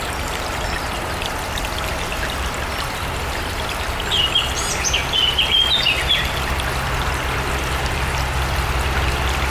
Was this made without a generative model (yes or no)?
yes